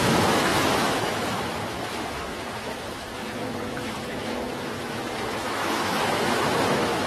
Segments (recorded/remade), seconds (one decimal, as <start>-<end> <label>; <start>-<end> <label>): 0.0-7.1 remade